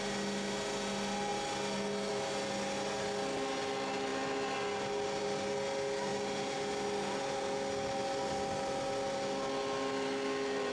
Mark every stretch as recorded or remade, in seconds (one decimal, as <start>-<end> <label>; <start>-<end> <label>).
0.0-10.7 recorded